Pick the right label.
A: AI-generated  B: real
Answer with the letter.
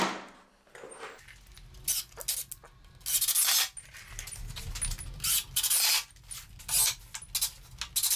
B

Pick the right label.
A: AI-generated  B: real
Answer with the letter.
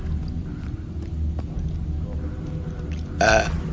B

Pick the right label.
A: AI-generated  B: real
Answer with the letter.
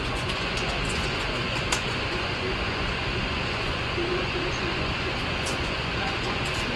A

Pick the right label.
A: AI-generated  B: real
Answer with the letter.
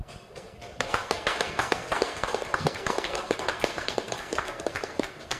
A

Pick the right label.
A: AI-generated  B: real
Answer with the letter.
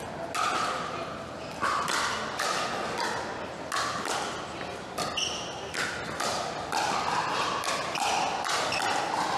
B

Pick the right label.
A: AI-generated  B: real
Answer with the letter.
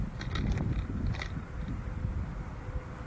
B